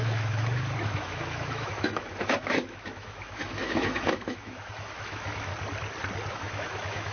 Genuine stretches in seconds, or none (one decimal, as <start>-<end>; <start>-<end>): 5.5-6.3